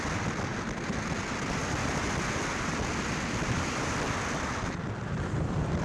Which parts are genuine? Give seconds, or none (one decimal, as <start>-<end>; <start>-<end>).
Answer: 0.0-5.8